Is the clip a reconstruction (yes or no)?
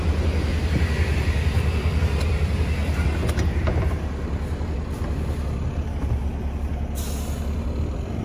no